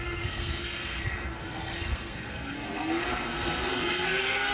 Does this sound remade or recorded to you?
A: remade